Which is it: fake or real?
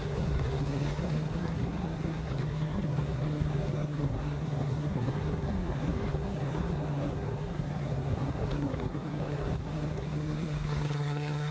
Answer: fake